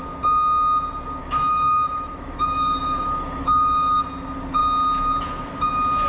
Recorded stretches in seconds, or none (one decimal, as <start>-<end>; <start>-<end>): 0.0-1.2; 4.0-6.1